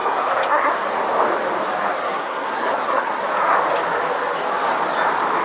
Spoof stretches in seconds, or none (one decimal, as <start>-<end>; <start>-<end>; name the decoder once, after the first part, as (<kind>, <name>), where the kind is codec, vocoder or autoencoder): 0.0-0.7 (codec, SNAC); 2.0-3.2